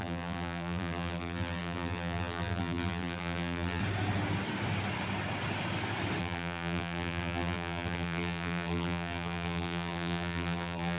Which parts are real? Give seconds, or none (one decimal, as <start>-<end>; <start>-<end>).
3.8-6.2